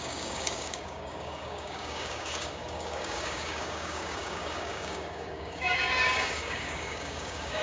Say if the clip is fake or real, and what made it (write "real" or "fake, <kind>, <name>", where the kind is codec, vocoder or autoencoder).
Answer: fake, codec, DAC